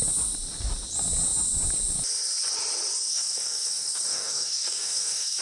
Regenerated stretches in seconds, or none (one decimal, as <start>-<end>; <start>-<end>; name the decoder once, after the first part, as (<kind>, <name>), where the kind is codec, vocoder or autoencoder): 3.1-5.4 (codec, DAC)